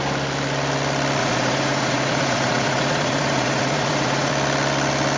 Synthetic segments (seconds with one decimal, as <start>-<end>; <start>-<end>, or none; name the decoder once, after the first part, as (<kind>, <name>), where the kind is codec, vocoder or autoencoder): 1.2-4.3 (vocoder, Vocos)